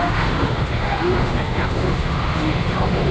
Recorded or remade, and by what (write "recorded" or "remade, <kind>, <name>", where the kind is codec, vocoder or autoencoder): remade, autoencoder, DAC-VAE